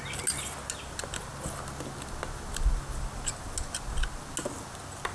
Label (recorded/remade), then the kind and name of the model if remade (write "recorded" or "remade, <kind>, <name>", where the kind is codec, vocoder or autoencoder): recorded